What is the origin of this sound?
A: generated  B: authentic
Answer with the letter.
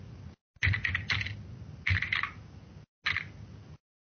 B